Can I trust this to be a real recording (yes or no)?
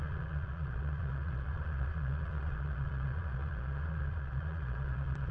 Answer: no